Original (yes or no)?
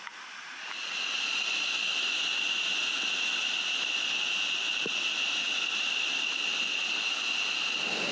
yes